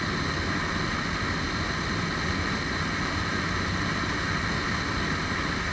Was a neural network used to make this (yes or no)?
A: no